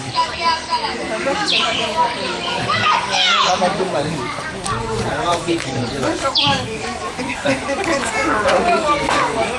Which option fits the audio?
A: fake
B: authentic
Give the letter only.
A